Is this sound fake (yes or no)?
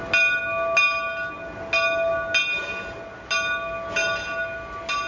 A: no